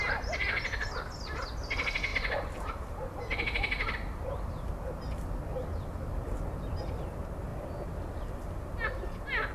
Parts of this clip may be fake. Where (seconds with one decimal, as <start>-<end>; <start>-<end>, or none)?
2.1-4.7; 7.5-8.7